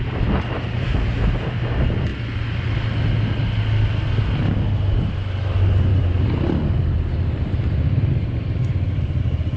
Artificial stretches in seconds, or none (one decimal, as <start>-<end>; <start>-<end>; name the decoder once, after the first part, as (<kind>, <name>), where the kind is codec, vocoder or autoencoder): 0.0-2.1 (vocoder, BigVGAN v2); 5.0-5.9; 9.2-9.6